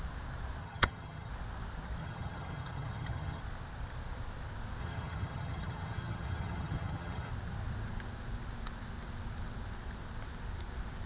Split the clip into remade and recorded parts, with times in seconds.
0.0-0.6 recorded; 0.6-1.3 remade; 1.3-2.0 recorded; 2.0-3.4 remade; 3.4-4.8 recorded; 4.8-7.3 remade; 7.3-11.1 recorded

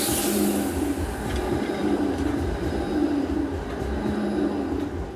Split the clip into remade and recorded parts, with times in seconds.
0.0-5.2 recorded

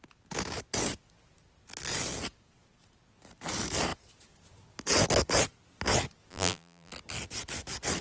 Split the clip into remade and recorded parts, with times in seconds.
0.0-6.3 recorded; 6.3-6.9 remade; 6.9-8.0 recorded

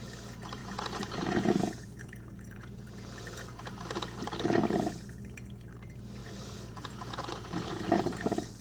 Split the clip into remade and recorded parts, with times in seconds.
0.0-0.6 recorded; 0.6-3.7 remade; 3.7-6.2 recorded; 6.2-8.6 remade

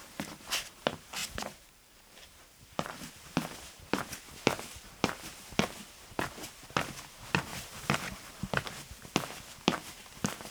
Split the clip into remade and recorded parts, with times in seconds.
0.0-5.8 remade; 5.8-6.7 recorded; 6.7-7.5 remade; 7.5-9.6 recorded; 9.6-10.5 remade

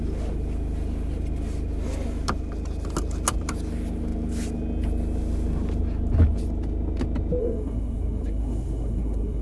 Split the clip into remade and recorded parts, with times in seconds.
0.0-7.4 recorded; 7.4-9.4 remade